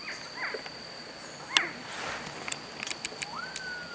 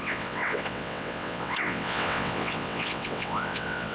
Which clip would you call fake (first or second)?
second